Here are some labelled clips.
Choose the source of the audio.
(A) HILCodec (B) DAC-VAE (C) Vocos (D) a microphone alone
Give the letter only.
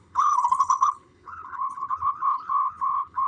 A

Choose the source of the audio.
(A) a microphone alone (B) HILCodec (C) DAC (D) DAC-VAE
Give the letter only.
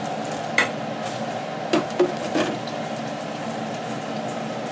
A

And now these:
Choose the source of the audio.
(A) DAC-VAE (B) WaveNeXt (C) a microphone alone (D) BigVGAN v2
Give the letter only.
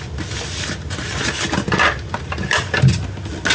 C